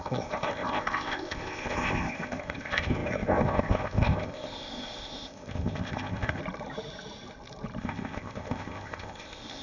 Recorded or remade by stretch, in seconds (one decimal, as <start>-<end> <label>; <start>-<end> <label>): 0.0-6.4 remade; 6.4-7.8 recorded; 7.8-9.6 remade